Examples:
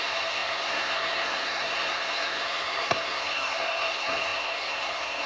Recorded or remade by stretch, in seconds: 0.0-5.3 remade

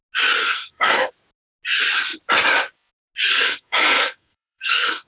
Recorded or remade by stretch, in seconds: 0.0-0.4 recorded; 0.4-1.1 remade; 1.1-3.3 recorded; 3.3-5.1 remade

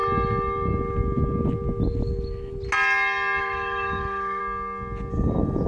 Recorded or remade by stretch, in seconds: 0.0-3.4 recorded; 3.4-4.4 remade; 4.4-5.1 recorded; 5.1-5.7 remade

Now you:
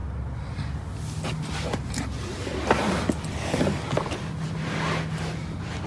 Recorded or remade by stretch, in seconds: 0.0-5.9 recorded

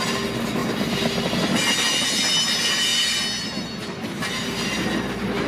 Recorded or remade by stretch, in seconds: 0.0-5.5 recorded

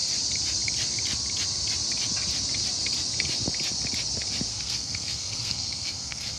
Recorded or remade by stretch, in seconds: 0.0-4.5 recorded; 4.5-6.4 remade

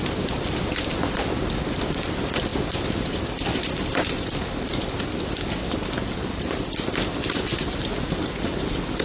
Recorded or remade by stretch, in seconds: 0.0-9.0 recorded

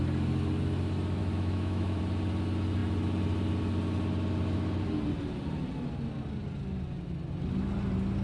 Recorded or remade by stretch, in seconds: 0.0-1.2 recorded; 1.2-2.0 remade; 2.0-8.2 recorded